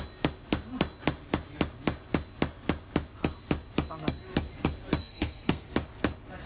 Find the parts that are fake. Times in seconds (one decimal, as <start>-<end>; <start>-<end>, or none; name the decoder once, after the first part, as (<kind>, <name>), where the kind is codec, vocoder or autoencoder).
5.0-5.7 (codec, SNAC)